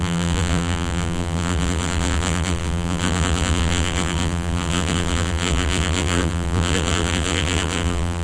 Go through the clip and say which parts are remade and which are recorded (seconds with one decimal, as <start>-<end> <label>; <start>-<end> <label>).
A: 0.0-8.2 remade